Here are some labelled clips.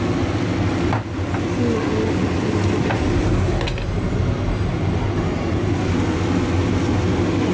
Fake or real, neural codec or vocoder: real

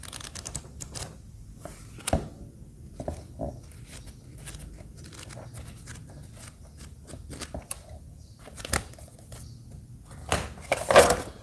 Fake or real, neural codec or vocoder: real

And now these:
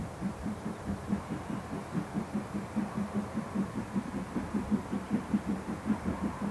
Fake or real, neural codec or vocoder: fake, vocoder, BigVGAN v2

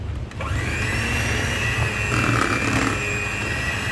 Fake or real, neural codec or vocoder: real